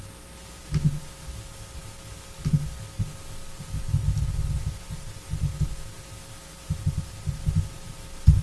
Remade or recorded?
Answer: recorded